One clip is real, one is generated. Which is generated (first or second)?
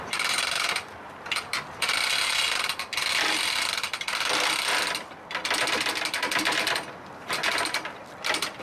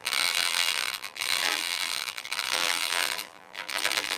second